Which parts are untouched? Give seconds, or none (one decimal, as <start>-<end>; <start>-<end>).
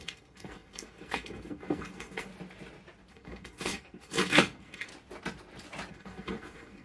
2.3-3.1; 4.9-5.9